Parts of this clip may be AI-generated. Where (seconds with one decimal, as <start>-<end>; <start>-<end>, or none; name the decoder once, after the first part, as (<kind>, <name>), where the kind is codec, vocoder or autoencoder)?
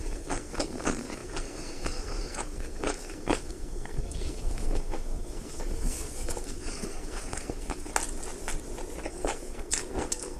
0.0-7.9 (codec, SNAC); 9.1-10.4